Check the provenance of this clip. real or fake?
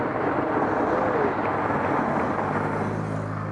real